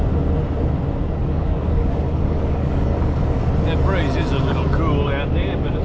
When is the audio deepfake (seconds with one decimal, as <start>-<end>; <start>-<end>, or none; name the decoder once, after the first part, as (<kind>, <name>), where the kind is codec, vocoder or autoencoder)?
1.2-3.5 (codec, DAC)